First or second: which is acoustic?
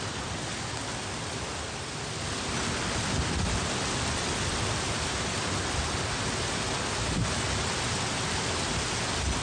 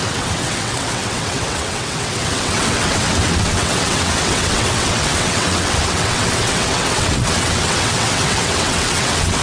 first